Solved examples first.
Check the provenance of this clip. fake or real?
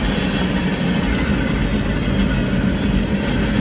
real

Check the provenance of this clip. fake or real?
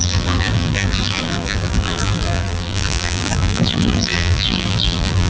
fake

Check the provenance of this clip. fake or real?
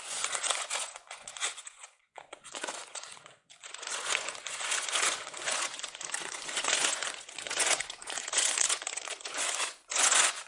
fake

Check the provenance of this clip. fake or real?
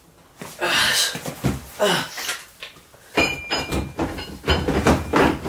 real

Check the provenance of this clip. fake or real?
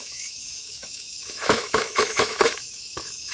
fake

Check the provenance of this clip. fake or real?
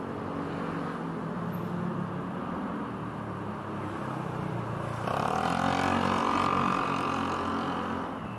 real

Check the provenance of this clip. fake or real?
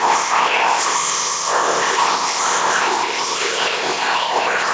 fake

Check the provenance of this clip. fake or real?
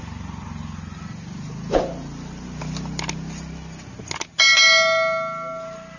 real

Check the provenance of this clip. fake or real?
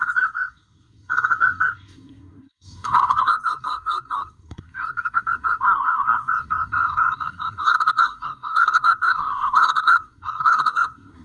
fake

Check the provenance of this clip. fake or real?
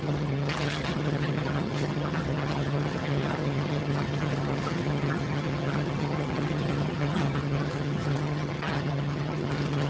fake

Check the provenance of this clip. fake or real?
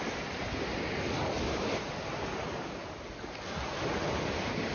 real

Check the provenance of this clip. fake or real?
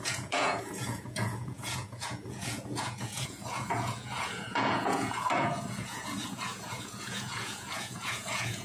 fake